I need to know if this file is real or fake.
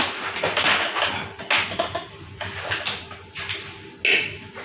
real